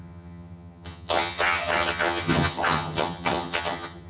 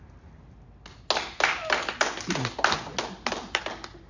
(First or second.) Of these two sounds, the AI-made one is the first